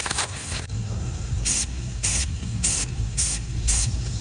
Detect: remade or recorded remade